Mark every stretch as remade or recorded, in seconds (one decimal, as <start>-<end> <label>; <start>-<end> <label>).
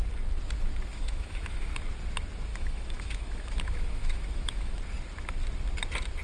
0.0-0.9 recorded; 0.9-1.7 remade; 1.7-2.5 recorded; 2.5-4.8 remade; 4.8-6.2 recorded